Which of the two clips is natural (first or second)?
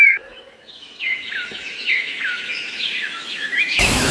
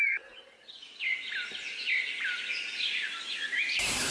second